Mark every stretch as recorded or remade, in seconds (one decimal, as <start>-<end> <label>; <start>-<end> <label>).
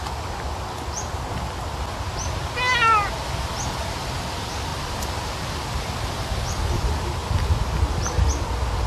0.0-8.9 recorded